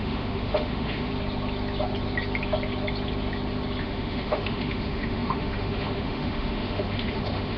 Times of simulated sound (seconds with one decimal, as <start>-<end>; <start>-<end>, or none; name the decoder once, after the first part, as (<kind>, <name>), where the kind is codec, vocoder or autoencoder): 0.0-1.1 (autoencoder, DAC-VAE); 3.8-7.6